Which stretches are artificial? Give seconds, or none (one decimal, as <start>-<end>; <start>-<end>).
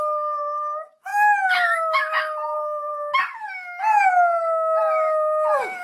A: 0.0-2.9; 3.4-4.1; 4.8-5.8